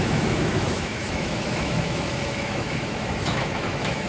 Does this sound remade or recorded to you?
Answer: remade